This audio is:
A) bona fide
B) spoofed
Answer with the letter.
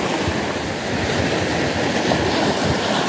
A